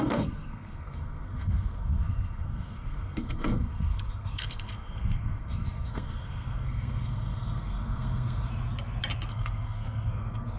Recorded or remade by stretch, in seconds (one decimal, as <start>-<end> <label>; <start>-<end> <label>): 0.0-8.5 remade; 8.5-9.3 recorded; 9.3-10.6 remade